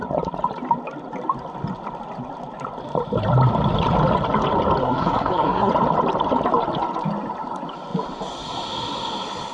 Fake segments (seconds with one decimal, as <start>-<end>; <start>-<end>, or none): 4.8-5.7